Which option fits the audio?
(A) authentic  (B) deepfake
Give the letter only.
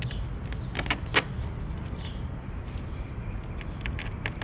A